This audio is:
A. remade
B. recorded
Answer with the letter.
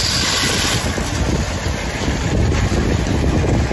B